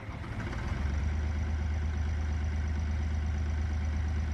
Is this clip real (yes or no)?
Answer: yes